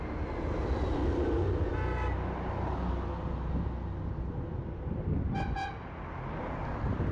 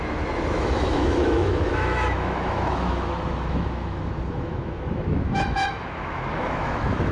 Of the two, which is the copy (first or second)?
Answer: second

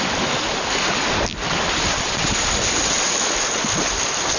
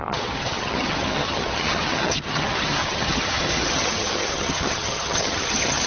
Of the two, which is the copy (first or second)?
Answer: second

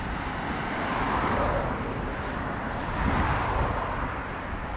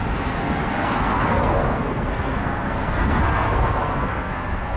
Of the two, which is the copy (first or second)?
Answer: second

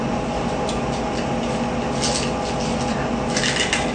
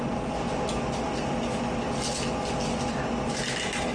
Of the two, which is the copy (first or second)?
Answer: second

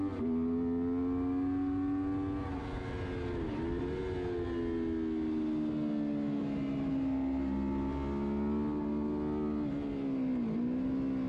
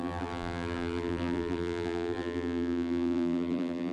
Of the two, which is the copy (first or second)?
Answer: second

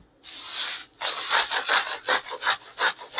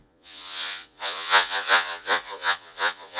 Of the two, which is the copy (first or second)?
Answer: second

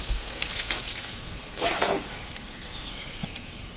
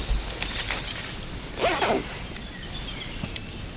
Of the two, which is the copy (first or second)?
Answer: first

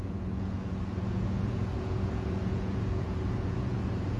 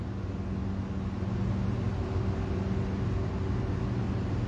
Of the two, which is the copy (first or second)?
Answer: first